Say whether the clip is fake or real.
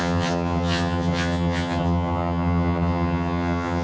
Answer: fake